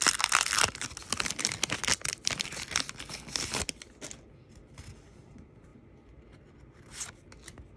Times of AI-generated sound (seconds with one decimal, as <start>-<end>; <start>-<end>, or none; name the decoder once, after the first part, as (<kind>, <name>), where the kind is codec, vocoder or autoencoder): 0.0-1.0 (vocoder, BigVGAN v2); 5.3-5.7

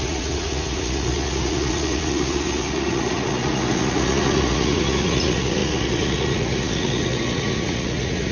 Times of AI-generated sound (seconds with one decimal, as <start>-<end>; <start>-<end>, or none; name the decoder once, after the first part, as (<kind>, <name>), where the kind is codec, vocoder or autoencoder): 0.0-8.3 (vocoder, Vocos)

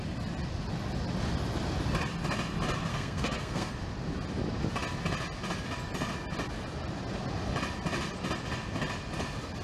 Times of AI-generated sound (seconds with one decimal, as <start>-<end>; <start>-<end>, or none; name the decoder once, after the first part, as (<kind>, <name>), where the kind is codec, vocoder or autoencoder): 2.9-3.7 (codec, SNAC)

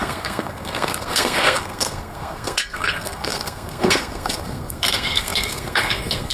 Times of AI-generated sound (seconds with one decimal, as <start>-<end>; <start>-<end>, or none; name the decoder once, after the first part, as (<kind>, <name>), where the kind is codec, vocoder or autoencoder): 0.0-6.3 (codec, SNAC)

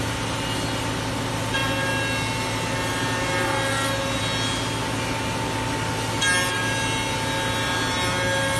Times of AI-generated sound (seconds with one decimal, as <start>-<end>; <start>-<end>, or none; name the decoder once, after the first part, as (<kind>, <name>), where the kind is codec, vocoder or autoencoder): none